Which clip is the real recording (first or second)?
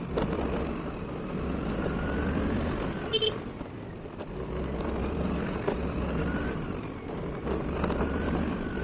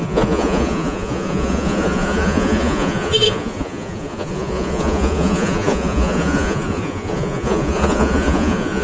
first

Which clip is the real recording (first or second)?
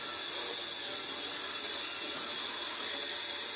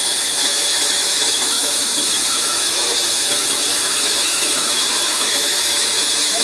first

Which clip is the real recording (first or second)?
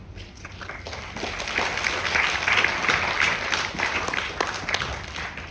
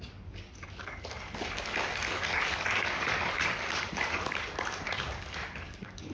first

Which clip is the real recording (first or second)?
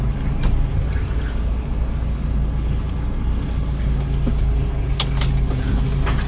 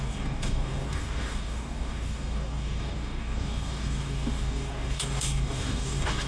first